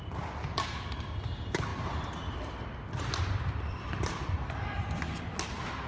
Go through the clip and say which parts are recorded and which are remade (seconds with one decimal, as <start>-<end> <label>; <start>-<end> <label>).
0.0-1.7 recorded; 1.7-5.2 remade; 5.2-5.9 recorded